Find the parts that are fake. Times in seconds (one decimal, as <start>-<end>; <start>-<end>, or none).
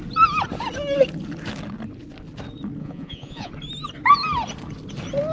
2.8-3.5